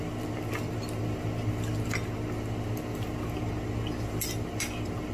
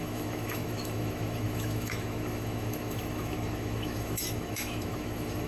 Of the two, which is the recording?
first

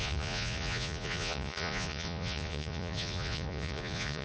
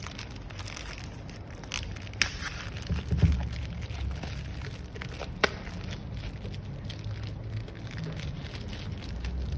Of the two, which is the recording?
second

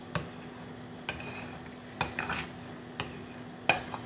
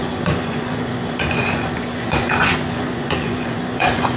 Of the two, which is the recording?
first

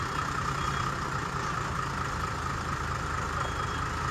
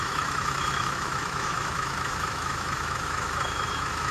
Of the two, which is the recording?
first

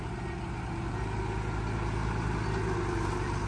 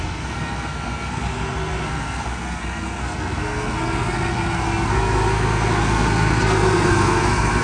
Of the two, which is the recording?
first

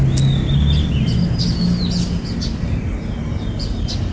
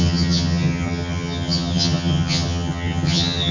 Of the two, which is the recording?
first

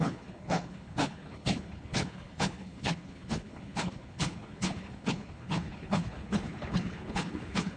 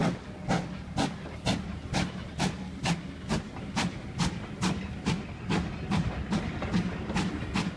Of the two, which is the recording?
second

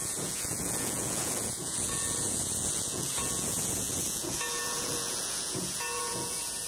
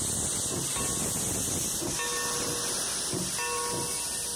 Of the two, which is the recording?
second